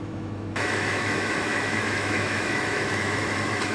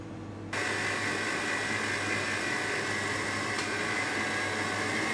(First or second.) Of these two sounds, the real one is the second